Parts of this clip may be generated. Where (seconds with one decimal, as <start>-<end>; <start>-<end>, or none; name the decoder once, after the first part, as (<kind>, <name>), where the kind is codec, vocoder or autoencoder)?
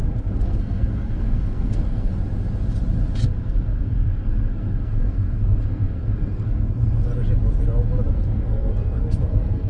0.0-2.1 (codec, SNAC); 3.3-7.1; 8.1-9.7